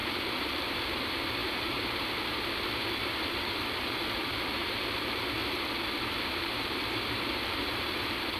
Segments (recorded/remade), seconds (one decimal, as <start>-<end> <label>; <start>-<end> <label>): 0.0-5.4 remade; 5.4-6.1 recorded; 6.1-8.4 remade